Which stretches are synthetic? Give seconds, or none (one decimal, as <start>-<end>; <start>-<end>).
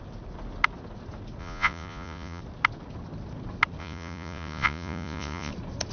1.4-2.4; 3.8-5.5